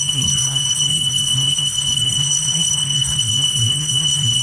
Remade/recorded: remade